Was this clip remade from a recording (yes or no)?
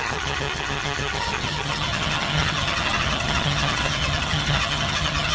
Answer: yes